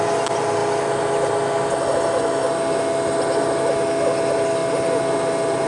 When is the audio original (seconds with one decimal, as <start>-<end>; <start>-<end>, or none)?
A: 0.0-5.7